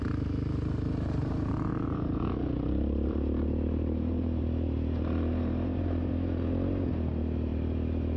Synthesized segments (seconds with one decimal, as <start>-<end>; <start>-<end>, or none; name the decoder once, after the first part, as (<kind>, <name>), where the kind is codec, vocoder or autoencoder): 1.2-6.1 (vocoder, BigVGAN v2); 7.5-8.2